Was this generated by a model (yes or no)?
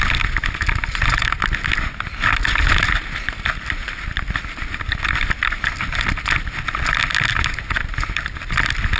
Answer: no